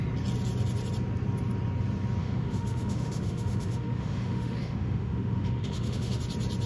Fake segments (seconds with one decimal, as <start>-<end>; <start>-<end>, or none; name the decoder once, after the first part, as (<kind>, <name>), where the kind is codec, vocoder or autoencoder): 2.2-6.2 (autoencoder, DAC-VAE)